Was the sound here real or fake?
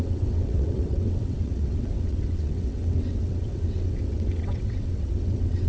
fake